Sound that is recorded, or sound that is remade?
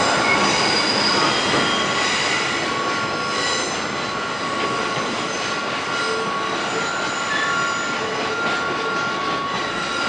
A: recorded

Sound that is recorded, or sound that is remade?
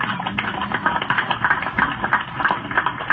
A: recorded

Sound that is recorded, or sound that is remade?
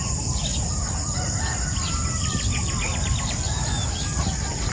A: recorded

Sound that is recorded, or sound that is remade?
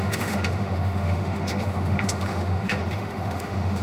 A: remade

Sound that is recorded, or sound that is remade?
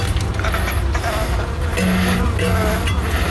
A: recorded